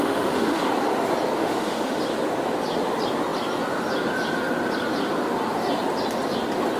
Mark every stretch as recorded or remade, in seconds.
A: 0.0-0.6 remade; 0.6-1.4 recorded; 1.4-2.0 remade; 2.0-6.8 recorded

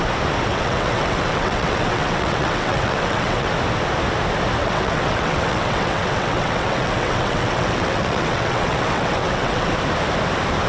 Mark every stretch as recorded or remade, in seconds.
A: 0.0-0.5 recorded; 0.5-3.5 remade; 3.5-4.6 recorded; 4.6-9.7 remade; 9.7-10.7 recorded

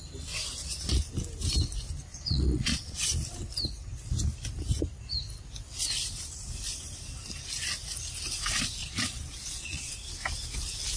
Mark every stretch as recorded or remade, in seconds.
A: 0.0-2.1 recorded; 2.1-3.1 remade; 3.1-8.8 recorded; 8.8-9.9 remade; 9.9-11.0 recorded

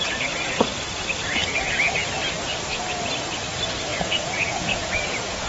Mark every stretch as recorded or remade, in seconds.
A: 0.0-3.9 recorded; 3.9-5.5 remade